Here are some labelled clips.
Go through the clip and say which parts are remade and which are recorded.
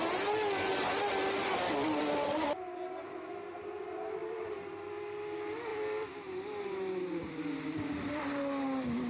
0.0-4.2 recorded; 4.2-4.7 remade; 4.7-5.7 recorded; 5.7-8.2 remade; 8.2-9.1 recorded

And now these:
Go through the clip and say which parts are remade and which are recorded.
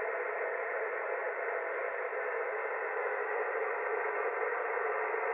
0.0-1.2 remade; 1.2-4.4 recorded; 4.4-5.3 remade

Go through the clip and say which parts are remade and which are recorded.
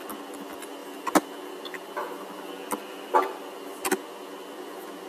0.0-0.8 recorded; 0.8-3.9 remade; 3.9-5.1 recorded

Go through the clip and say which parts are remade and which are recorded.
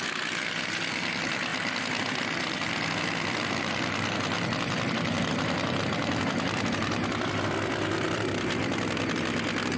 0.0-9.8 recorded